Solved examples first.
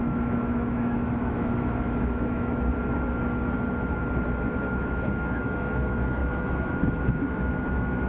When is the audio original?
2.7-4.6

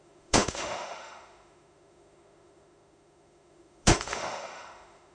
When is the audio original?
none

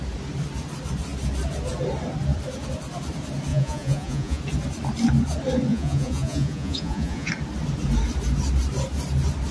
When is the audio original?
0.0-3.5; 4.4-5.7; 7.3-9.5